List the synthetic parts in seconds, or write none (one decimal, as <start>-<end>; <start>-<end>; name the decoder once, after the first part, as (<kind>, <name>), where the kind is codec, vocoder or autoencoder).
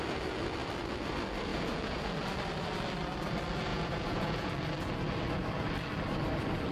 1.5-2.1 (vocoder, Vocos); 3.7-4.5